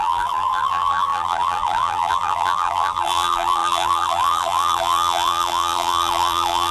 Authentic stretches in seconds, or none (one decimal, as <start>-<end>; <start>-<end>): none